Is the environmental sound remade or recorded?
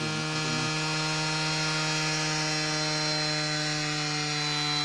recorded